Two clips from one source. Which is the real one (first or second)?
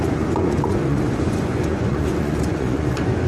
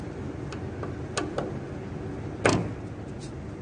second